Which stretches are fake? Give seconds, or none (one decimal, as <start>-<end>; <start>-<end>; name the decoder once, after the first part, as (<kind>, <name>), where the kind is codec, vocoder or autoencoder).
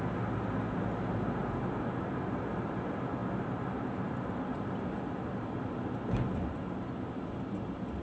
none